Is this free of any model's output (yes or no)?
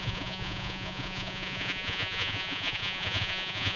no